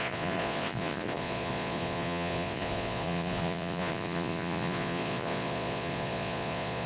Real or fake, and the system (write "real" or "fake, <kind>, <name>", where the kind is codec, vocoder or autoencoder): fake, vocoder, Vocos